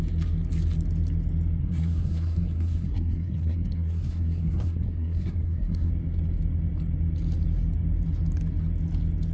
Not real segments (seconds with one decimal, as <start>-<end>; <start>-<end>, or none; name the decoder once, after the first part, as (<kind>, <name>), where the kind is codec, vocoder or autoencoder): 1.6-5.9 (codec, SNAC)